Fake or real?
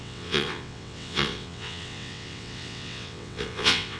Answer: fake